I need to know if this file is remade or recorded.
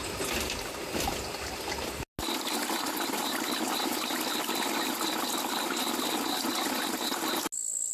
recorded